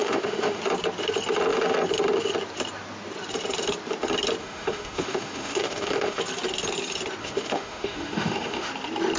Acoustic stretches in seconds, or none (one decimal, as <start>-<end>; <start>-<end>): 0.6-4.4; 6.2-7.2; 8.7-9.2